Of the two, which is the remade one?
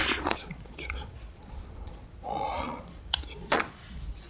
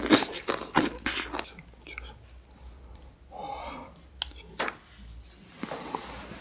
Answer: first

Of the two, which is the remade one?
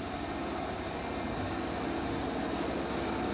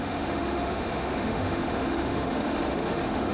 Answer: second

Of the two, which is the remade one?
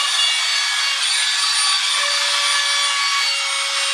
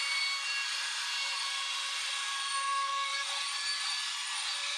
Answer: second